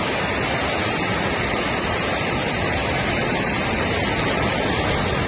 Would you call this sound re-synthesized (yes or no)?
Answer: no